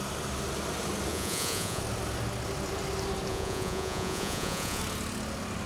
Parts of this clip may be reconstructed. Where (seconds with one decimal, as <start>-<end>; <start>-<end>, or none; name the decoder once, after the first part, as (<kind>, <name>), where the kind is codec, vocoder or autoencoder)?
1.1-1.8 (vocoder, Vocos); 3.3-4.8